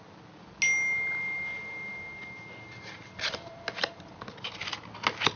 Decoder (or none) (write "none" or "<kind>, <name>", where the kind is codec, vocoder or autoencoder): none